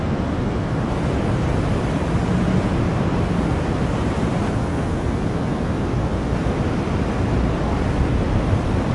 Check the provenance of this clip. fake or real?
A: real